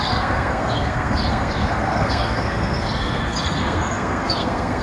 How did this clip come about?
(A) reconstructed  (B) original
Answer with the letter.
A